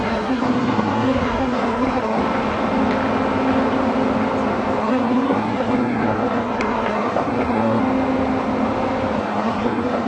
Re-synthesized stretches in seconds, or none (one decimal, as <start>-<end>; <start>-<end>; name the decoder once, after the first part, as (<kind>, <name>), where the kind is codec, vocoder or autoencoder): 0.0-2.2 (codec, SNAC); 4.8-7.8; 9.2-10.1